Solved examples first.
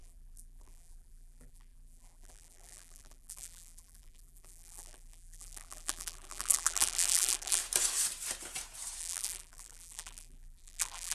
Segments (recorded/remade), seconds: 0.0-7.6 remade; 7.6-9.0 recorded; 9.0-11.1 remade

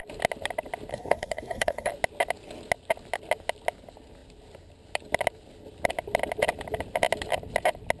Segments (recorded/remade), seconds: 0.0-0.9 recorded; 0.9-1.9 remade; 1.9-8.0 recorded

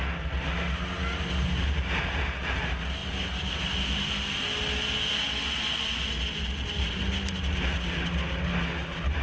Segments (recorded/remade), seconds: 0.0-9.2 recorded